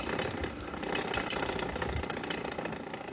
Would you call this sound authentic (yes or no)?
yes